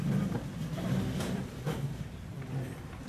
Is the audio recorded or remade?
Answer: remade